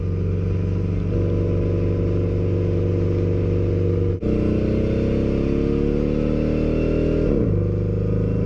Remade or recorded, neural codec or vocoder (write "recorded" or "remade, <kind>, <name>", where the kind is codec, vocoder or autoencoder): recorded